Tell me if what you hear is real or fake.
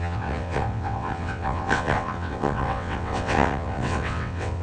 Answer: fake